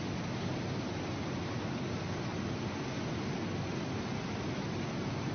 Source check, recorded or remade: recorded